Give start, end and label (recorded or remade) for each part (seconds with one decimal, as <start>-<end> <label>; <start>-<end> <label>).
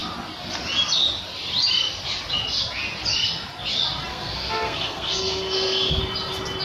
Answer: 0.0-4.1 recorded; 4.1-6.0 remade; 6.0-6.6 recorded